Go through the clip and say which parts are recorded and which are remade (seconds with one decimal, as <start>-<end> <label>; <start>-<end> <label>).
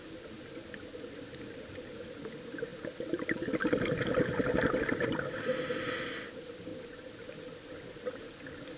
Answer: 0.0-6.7 recorded; 6.7-7.2 remade; 7.2-8.8 recorded